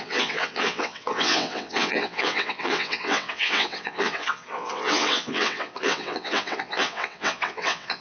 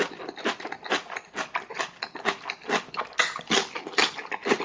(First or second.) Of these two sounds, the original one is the second